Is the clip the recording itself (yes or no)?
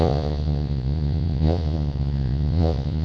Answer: no